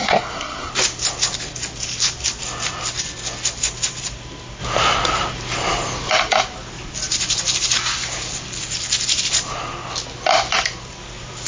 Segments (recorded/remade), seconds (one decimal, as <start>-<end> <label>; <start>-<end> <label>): 0.0-0.7 remade; 0.7-11.5 recorded